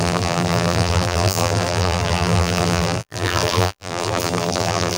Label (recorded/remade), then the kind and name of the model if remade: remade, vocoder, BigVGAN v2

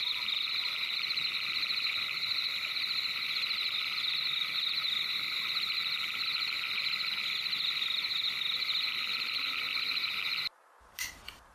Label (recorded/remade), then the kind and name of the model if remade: recorded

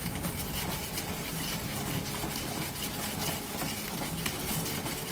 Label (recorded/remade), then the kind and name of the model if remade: recorded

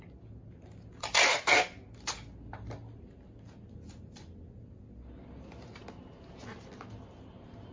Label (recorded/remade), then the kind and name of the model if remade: recorded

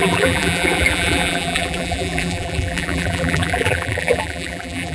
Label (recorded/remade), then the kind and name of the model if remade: remade, vocoder, BigVGAN v2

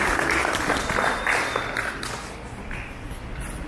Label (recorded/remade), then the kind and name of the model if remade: recorded